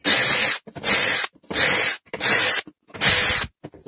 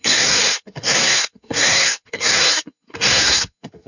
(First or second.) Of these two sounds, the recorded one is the first